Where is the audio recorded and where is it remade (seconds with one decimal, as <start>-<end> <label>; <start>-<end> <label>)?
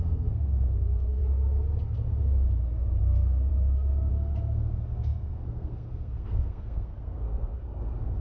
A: 0.0-1.2 remade; 1.2-3.0 recorded; 3.0-3.5 remade; 3.5-4.1 recorded; 4.1-8.2 remade